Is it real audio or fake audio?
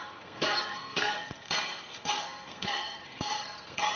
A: fake